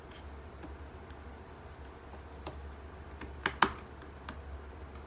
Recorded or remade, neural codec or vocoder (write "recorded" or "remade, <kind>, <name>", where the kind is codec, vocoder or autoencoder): recorded